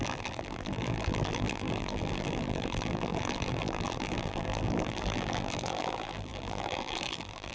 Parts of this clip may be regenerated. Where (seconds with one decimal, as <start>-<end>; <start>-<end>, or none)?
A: 0.0-7.5